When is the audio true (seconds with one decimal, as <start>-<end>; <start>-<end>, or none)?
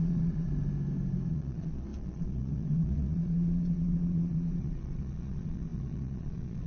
0.5-1.3